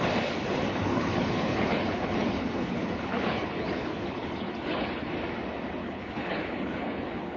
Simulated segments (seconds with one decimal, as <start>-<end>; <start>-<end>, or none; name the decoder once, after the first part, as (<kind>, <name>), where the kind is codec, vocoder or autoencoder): 0.7-5.1 (codec, HILCodec); 5.8-7.4